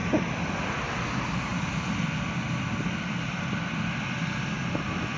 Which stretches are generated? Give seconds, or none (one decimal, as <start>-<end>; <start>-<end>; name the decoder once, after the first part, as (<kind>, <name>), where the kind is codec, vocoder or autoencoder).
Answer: none